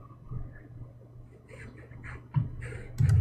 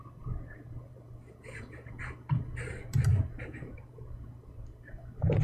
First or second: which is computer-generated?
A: second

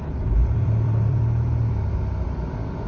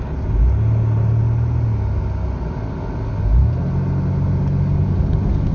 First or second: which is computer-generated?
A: first